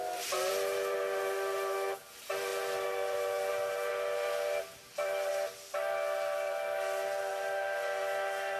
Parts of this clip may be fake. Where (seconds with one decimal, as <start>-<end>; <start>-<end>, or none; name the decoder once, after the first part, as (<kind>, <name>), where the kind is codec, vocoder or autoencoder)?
none